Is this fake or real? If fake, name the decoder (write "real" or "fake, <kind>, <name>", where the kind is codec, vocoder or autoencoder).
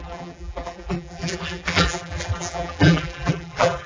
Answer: fake, vocoder, BigVGAN v2